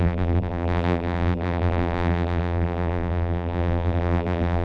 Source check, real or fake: fake